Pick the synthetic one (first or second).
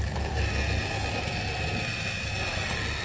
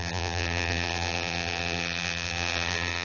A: second